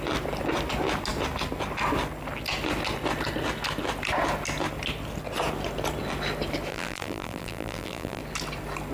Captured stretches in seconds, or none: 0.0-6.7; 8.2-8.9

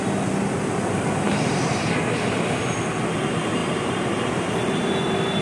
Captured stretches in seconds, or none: 0.0-1.3; 2.8-3.6; 4.5-5.4